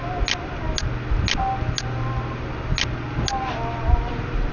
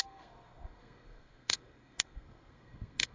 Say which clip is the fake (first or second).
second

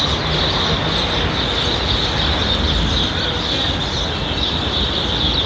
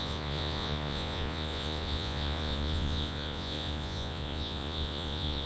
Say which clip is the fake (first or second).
second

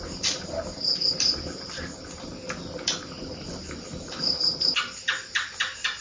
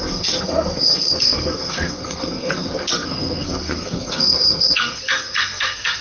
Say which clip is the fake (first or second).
second